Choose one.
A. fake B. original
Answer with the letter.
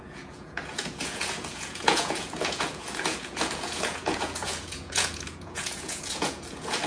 A